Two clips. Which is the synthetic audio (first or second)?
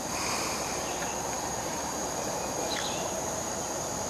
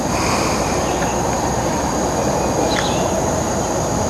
first